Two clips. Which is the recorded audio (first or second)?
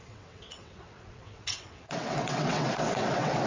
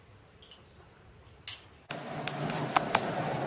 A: second